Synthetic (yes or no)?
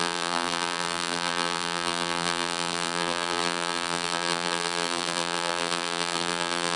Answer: yes